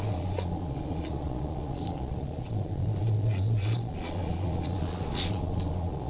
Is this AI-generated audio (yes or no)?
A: yes